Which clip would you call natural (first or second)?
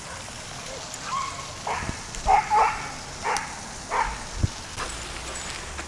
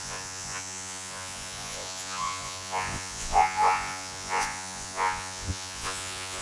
first